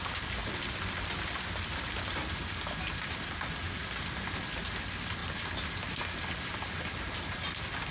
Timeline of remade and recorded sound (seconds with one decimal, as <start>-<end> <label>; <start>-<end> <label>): 0.0-0.4 recorded; 0.4-2.5 remade; 2.5-5.2 recorded; 5.2-5.9 remade; 5.9-7.9 recorded